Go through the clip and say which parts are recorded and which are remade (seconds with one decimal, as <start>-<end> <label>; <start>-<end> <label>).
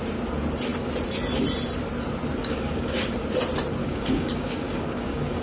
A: 0.0-2.4 recorded; 2.4-3.2 remade; 3.2-3.8 recorded; 3.8-5.4 remade